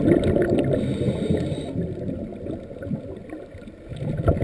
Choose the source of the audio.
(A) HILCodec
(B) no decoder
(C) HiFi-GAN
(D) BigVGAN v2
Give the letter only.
B